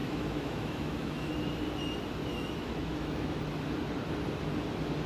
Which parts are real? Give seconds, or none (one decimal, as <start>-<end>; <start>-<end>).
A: 1.3-2.3; 3.4-5.1